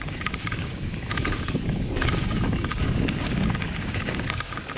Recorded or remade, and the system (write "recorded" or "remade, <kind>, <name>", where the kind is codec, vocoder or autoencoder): remade, codec, DAC